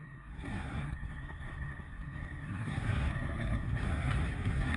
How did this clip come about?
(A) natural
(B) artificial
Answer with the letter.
B